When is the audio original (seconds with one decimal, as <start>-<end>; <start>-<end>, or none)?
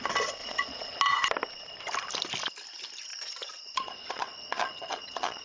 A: 0.0-0.4; 1.0-3.1